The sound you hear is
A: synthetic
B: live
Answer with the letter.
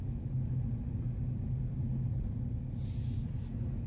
B